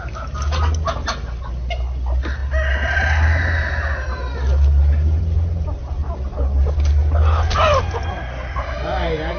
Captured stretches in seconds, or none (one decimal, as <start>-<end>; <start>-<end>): 0.0-9.4